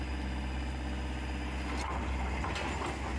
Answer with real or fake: real